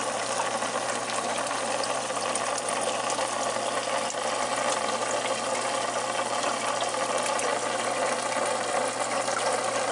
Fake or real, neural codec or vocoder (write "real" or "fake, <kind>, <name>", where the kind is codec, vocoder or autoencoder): real